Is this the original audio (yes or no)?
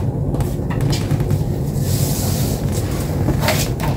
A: yes